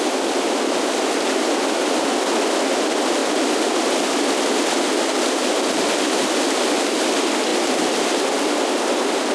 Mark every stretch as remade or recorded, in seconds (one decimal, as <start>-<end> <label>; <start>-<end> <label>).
0.0-9.3 recorded